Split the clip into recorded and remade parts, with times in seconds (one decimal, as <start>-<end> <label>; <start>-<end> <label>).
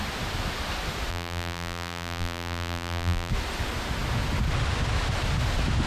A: 0.0-1.1 recorded; 1.1-3.3 remade; 3.3-5.9 recorded